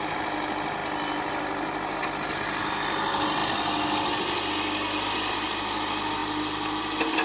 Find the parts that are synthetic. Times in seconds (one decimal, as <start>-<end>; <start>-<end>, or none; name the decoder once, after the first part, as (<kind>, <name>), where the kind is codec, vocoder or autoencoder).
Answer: none